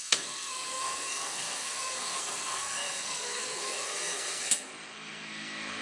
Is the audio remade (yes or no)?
yes